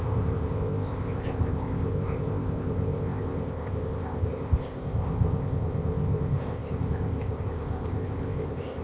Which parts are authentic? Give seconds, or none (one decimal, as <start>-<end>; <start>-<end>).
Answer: none